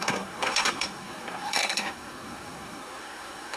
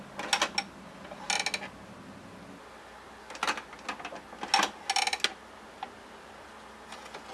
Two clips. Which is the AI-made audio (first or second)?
first